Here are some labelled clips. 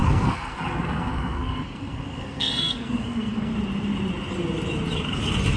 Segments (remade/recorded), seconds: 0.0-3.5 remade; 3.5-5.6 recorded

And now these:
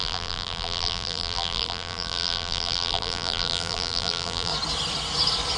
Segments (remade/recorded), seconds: 0.0-4.5 remade; 4.5-5.6 recorded

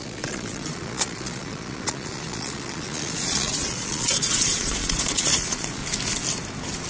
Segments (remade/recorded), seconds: 0.0-5.8 remade; 5.8-6.9 recorded